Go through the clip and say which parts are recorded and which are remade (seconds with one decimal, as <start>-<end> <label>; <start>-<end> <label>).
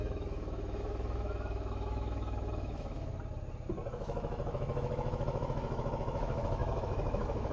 0.0-3.1 remade; 3.1-3.9 recorded; 3.9-7.5 remade